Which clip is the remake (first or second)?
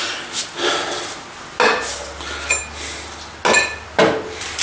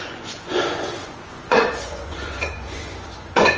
second